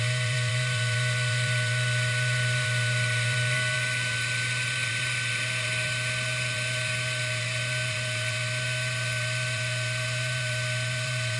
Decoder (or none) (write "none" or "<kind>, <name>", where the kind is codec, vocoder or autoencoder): vocoder, BigVGAN v2